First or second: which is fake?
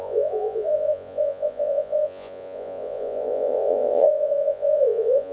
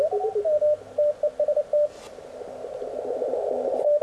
first